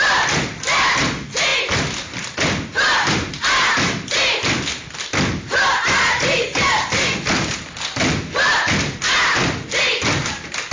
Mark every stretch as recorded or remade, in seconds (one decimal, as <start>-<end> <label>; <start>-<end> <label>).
0.0-10.7 recorded